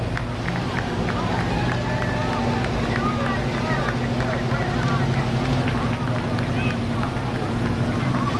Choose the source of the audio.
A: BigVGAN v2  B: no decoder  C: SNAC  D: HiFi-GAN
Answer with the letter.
B